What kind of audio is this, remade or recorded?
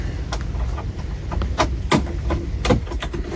recorded